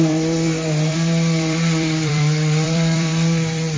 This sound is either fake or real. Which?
fake